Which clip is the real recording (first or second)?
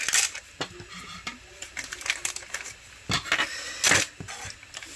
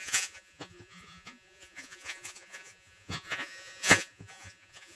first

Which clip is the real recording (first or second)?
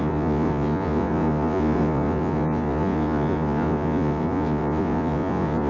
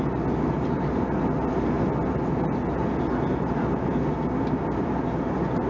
second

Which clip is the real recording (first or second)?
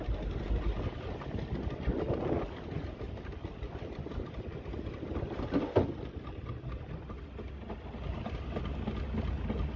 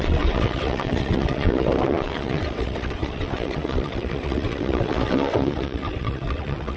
first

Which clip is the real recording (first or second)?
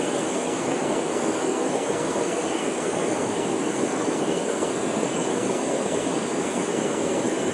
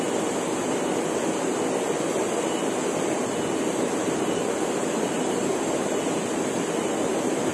second